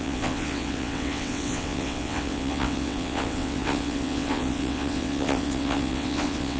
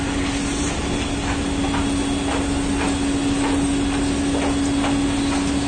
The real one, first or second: second